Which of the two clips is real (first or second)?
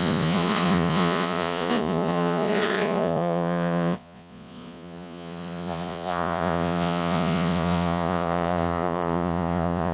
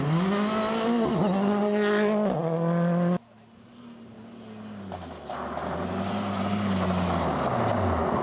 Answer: second